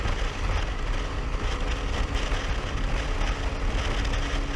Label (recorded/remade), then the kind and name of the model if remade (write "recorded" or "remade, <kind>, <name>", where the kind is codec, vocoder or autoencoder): recorded